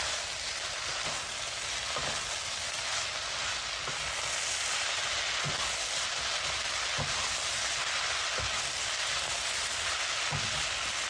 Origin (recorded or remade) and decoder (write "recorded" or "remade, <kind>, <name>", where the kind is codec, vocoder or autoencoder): recorded